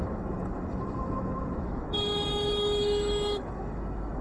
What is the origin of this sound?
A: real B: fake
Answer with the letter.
B